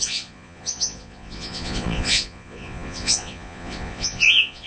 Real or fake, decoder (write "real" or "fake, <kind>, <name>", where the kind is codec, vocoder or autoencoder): fake, vocoder, Vocos